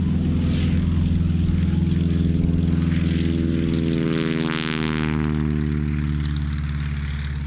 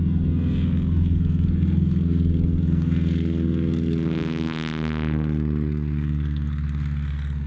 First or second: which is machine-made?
second